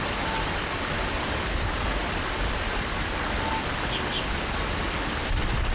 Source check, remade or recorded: recorded